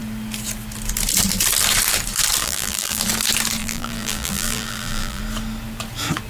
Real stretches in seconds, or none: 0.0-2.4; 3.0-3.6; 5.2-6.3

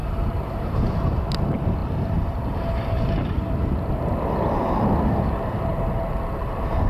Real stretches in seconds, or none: 1.2-1.8; 3.4-6.9

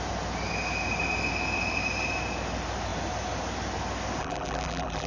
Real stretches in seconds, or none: 0.0-4.2

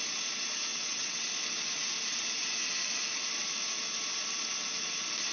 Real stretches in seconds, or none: 0.0-0.7; 1.3-5.3

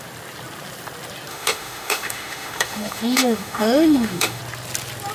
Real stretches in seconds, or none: 0.0-1.3; 4.4-5.1

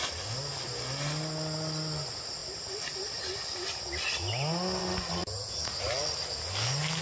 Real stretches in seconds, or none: 0.0-5.2; 5.8-7.0

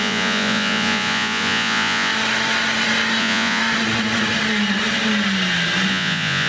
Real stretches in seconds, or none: 2.1-3.2; 3.6-5.9